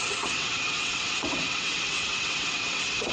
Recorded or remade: remade